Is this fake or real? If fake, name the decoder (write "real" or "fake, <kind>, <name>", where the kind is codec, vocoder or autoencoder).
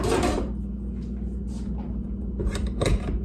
real